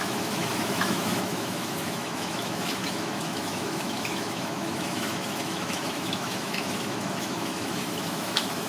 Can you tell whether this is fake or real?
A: fake